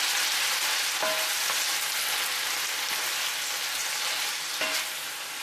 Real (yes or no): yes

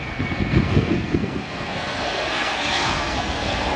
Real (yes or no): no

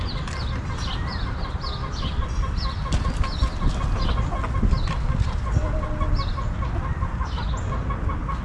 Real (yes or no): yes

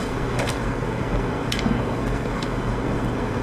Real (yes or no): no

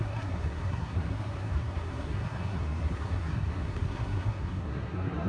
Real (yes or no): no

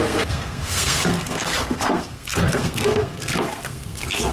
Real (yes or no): no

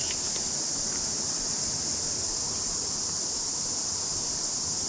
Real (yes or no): yes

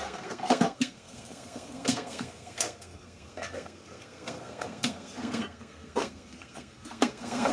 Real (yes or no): no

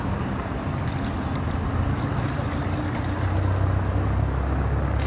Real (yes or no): yes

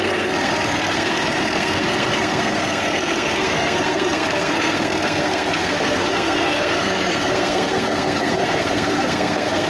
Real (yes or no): no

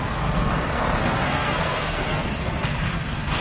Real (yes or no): no